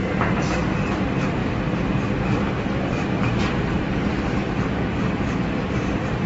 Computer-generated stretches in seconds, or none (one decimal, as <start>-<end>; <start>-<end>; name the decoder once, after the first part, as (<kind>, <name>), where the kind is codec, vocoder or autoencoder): 0.0-1.4 (vocoder, BigVGAN v2); 2.6-6.3